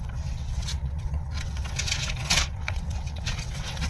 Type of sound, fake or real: fake